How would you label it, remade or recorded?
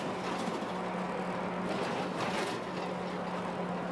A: recorded